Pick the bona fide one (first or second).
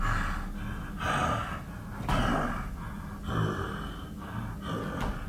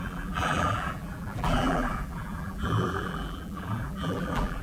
first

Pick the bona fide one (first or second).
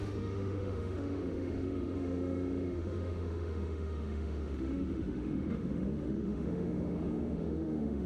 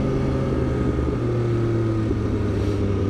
second